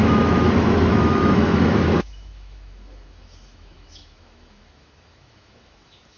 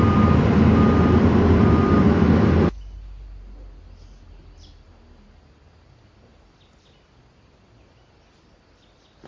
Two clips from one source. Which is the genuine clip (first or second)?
second